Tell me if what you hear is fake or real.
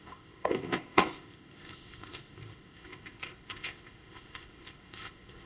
fake